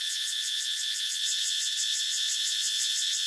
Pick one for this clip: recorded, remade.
remade